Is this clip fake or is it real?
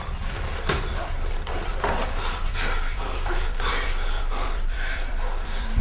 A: fake